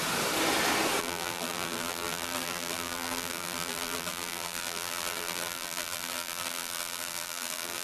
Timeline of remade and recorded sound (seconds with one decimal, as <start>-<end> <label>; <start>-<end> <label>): 0.0-1.0 recorded; 1.0-7.8 remade